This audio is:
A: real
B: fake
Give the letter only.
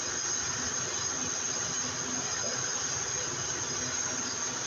A